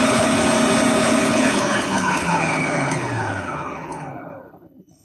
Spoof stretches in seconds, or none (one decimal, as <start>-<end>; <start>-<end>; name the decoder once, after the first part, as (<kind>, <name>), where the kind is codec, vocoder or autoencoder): 0.0-0.4 (codec, HILCodec); 1.0-5.0